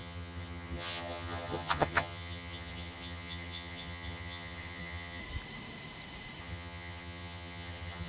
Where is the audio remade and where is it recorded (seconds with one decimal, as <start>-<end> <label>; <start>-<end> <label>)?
0.0-5.2 remade; 5.2-6.4 recorded; 6.4-8.1 remade